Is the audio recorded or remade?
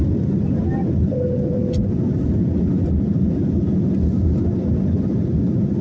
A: recorded